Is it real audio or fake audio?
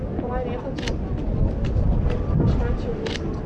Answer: real